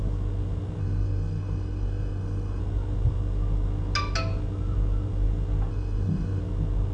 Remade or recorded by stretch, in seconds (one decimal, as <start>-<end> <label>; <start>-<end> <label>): 0.0-0.8 recorded; 0.8-2.6 remade; 2.6-5.7 recorded; 5.7-6.4 remade; 6.4-6.9 recorded